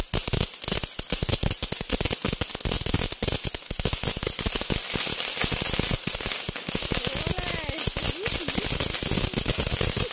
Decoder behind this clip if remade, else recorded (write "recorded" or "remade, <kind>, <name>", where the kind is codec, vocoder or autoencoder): recorded